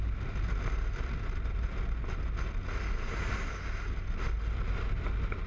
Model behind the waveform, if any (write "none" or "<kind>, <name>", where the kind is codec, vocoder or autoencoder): none